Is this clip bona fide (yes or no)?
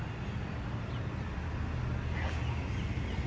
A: yes